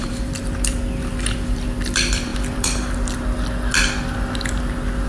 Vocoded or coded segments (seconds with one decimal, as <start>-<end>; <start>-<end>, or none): 0.0-0.8; 2.3-3.2